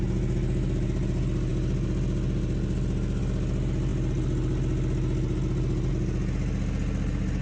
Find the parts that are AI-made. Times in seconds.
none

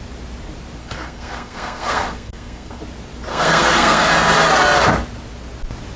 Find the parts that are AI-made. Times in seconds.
0.8-2.8 (codec, SNAC); 3.3-4.1